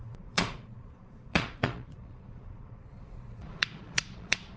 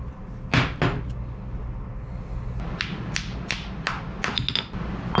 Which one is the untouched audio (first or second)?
second